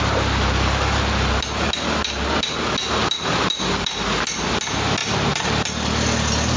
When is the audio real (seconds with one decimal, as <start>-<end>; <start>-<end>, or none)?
0.0-6.6